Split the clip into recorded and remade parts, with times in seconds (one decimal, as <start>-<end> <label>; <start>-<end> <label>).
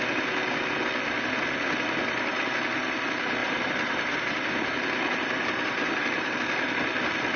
0.0-3.4 recorded; 3.4-6.3 remade; 6.3-7.4 recorded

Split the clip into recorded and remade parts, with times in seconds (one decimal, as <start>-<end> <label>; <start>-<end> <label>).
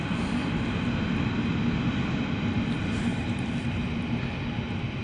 0.0-0.4 recorded; 0.4-1.1 remade; 1.1-3.1 recorded; 3.1-4.2 remade; 4.2-5.0 recorded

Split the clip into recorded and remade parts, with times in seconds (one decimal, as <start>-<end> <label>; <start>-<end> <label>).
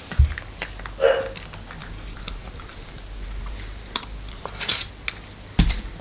0.0-1.8 recorded; 1.8-4.9 remade; 4.9-6.0 recorded